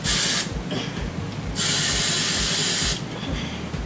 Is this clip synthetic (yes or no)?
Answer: no